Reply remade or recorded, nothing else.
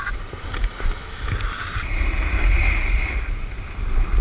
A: recorded